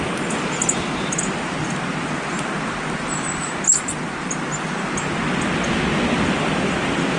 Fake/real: real